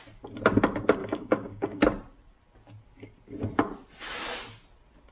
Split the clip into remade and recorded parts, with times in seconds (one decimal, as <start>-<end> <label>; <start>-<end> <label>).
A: 0.0-1.0 recorded; 1.0-1.8 remade; 1.8-5.1 recorded